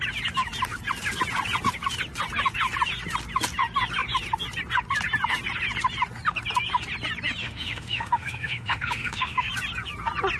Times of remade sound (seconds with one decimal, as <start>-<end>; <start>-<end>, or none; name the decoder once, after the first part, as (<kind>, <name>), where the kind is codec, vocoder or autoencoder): 7.4-9.5 (autoencoder, DAC-VAE)